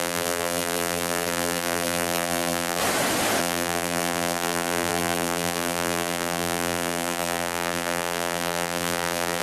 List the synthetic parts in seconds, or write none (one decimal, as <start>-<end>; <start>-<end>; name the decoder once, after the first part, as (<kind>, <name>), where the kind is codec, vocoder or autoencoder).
0.0-2.8 (vocoder, BigVGAN v2); 3.4-9.4